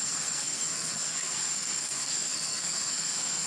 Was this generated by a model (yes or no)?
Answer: yes